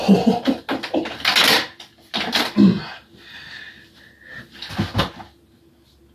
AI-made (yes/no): no